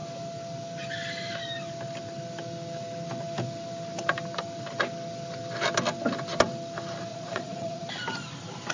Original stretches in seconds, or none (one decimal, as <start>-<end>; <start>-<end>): 0.0-7.1; 7.8-8.7